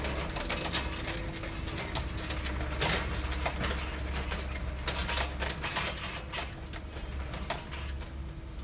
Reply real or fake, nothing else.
real